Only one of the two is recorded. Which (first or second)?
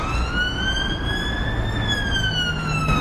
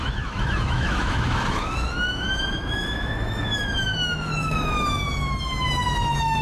first